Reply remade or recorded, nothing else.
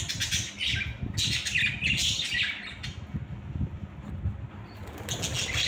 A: recorded